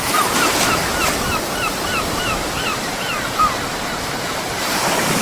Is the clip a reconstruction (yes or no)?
yes